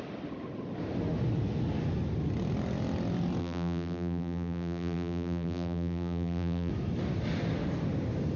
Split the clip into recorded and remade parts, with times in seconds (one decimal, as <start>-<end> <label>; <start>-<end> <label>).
0.0-3.4 recorded; 3.4-6.7 remade; 6.7-8.4 recorded